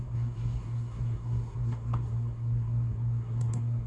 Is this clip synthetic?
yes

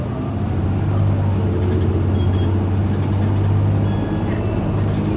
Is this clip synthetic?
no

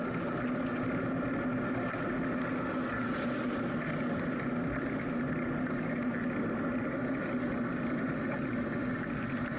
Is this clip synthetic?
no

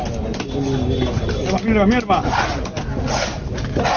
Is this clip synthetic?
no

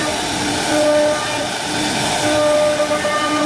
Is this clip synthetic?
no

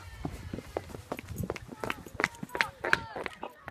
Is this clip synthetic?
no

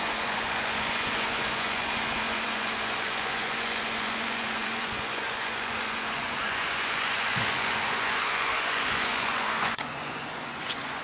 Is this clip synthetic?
yes